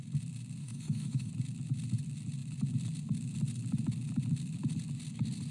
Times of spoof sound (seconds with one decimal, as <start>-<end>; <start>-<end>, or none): 0.6-1.3